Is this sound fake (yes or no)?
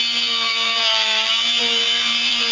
yes